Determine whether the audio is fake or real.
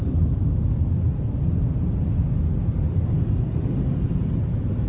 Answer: real